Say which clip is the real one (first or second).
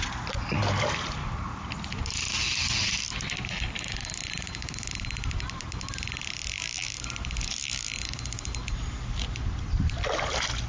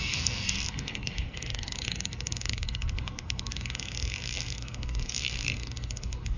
first